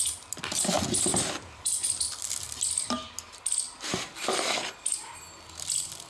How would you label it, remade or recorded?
recorded